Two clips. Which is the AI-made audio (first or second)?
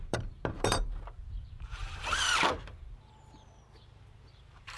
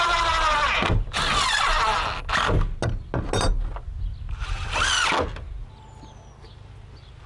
first